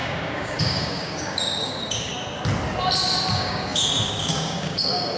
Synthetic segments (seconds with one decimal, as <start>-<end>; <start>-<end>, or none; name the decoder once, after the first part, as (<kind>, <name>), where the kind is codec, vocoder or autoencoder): 0.0-2.1 (codec, DAC); 3.3-5.2